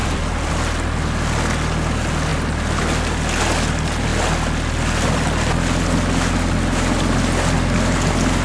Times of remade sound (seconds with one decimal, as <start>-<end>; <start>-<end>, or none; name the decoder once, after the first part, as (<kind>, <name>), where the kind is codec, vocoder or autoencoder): 0.0-0.5 (vocoder, BigVGAN v2)